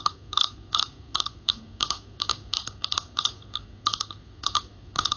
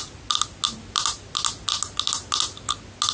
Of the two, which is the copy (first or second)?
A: first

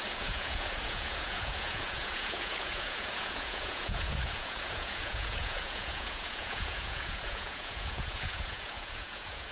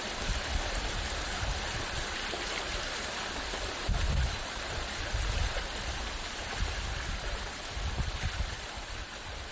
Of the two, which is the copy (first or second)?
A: first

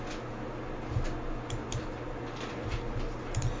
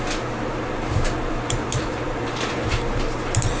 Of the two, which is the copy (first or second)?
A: second